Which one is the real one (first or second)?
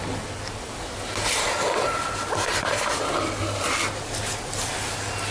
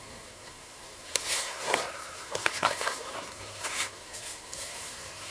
first